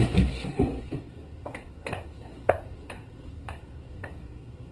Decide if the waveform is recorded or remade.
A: remade